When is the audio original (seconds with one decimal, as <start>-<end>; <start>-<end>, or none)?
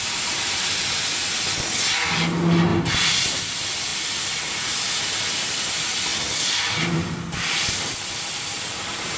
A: 0.0-2.7; 3.3-3.9; 4.5-6.1